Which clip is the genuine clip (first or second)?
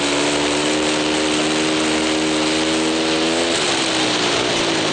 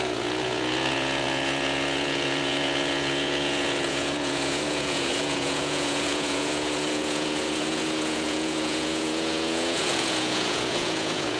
first